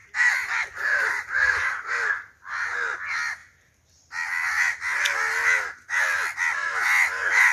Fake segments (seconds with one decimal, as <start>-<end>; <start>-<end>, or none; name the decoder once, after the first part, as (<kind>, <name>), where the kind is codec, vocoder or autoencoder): 0.0-2.1 (vocoder, BigVGAN v2)